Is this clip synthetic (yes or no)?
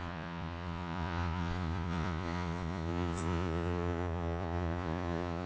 yes